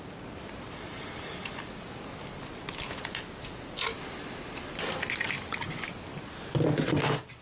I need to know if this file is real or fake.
real